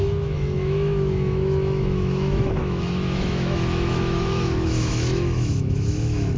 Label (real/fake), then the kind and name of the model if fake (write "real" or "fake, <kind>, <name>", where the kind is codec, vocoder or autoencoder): fake, autoencoder, DAC-VAE